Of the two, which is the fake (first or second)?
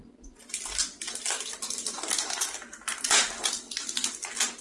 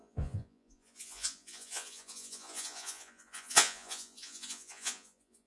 second